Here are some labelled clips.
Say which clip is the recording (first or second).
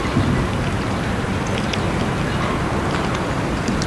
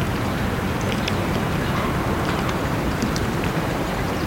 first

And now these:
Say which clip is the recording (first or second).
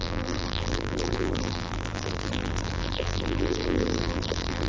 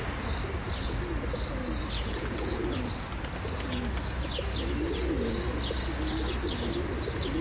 second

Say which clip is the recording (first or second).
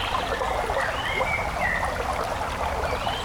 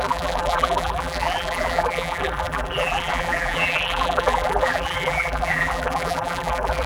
first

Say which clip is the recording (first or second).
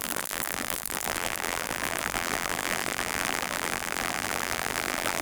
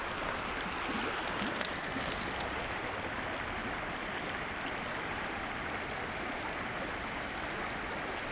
second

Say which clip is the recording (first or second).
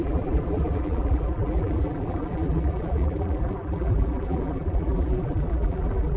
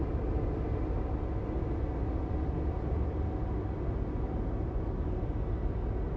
second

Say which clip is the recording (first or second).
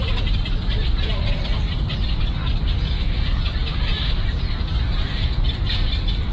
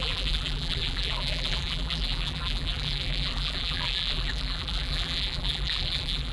first